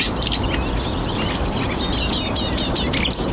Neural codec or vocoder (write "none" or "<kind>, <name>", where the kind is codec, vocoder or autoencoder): none